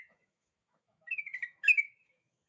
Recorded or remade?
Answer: remade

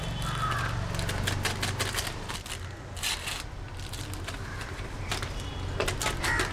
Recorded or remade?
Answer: recorded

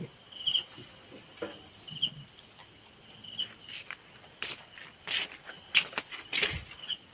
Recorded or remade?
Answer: recorded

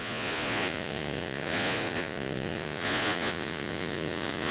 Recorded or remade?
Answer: remade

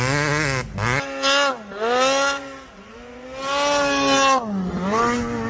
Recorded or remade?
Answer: recorded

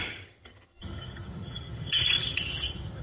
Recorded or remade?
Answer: remade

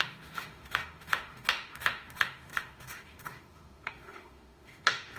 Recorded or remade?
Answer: remade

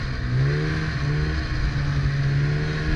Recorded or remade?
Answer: recorded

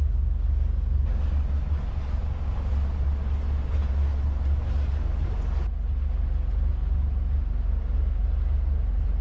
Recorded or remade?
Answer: recorded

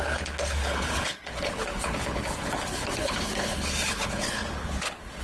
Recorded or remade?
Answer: remade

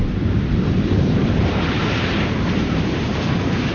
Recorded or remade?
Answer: remade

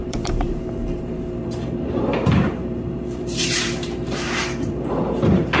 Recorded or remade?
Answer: remade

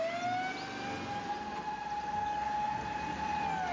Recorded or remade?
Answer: recorded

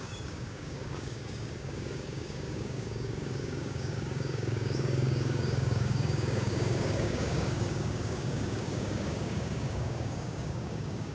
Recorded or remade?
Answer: remade